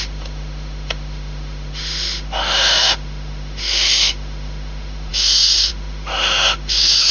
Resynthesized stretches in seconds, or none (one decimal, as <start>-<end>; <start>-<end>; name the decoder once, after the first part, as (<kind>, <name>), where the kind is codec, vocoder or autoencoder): 0.0-7.1 (autoencoder, DAC-VAE)